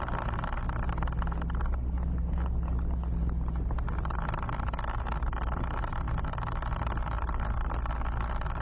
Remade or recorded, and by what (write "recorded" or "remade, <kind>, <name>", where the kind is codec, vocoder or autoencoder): recorded